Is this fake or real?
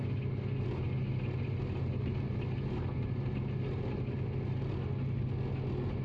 real